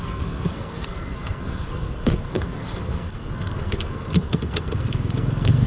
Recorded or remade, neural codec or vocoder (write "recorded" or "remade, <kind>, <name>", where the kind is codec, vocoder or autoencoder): remade, codec, SNAC